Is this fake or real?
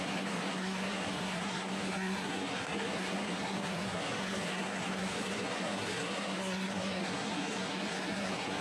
fake